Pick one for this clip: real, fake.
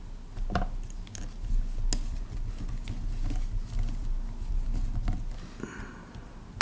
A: real